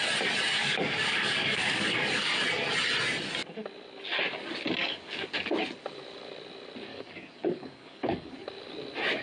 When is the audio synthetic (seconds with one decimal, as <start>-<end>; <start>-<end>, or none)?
0.6-2.3; 4.8-5.5; 6.9-8.3